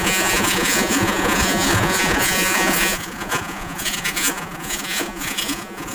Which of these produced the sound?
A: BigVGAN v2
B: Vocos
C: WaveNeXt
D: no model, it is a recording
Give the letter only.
B